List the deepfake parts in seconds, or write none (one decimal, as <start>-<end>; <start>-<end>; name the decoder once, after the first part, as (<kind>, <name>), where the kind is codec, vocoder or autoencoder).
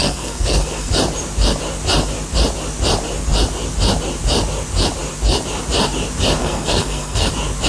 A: 0.0-0.9 (codec, SNAC); 6.4-7.3